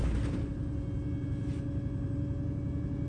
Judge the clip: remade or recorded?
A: recorded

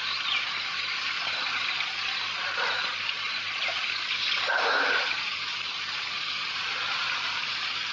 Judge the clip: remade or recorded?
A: recorded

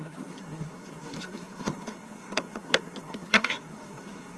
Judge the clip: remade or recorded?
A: remade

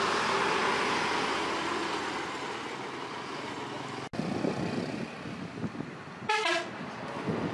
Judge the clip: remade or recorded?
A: recorded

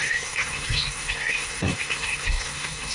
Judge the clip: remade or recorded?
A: remade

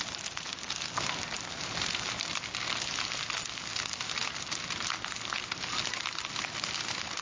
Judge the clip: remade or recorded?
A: recorded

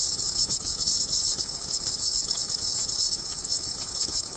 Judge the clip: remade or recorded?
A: remade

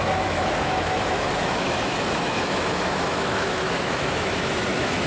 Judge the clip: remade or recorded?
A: remade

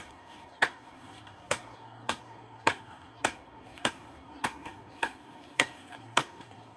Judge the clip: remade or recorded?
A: remade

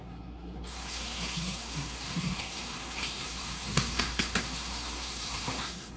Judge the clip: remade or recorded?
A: remade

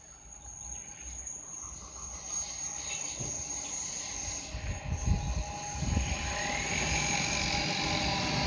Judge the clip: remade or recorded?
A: recorded